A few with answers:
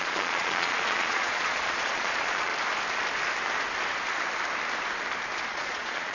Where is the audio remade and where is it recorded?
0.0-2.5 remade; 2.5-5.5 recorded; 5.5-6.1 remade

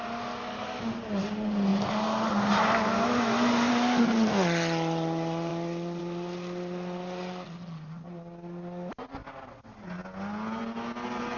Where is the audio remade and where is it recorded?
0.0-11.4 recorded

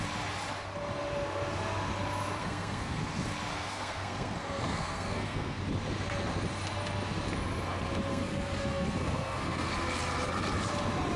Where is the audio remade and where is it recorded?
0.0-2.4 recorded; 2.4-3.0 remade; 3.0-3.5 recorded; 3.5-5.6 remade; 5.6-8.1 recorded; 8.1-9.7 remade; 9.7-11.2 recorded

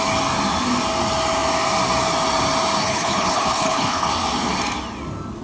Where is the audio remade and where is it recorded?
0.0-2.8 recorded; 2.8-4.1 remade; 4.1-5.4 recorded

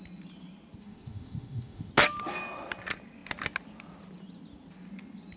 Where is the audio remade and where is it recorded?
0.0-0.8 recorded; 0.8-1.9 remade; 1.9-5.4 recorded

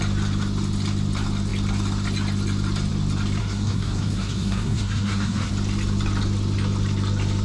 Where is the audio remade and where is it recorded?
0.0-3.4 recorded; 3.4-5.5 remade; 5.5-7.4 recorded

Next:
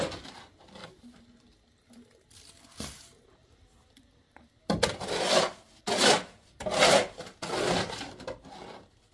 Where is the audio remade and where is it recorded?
0.0-9.1 recorded